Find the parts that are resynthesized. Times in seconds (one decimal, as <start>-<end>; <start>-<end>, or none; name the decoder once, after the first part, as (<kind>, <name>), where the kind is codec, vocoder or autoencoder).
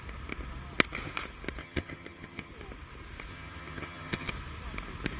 1.6-2.5 (vocoder, HiFi-GAN); 3.3-4.3